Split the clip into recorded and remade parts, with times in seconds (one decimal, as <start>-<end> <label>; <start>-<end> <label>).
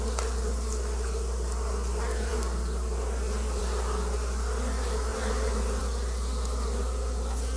0.0-5.1 recorded; 5.1-5.8 remade; 5.8-7.6 recorded